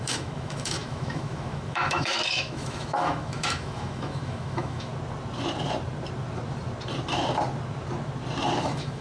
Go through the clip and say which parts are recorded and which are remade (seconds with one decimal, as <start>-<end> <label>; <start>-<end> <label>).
0.0-4.9 remade; 4.9-8.6 recorded; 8.6-9.0 remade